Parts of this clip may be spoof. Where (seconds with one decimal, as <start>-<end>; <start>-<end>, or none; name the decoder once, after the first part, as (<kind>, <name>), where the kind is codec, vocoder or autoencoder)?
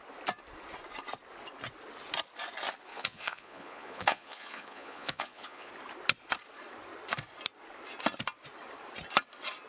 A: 2.9-5.7 (vocoder, Vocos)